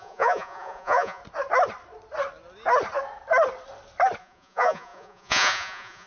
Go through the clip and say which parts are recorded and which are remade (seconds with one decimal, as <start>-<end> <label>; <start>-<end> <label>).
0.0-1.2 remade; 1.2-4.2 recorded; 4.2-6.1 remade